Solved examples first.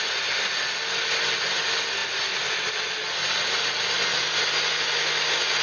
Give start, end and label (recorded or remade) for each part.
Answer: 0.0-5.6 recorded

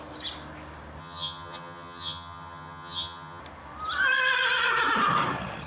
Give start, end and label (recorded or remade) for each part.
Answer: 0.0-1.0 recorded; 1.0-3.4 remade; 3.4-5.7 recorded